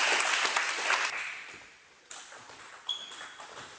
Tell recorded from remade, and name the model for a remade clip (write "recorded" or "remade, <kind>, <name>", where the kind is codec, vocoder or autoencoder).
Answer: recorded